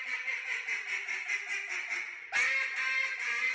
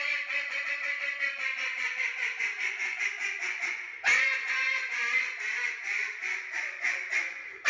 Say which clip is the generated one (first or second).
second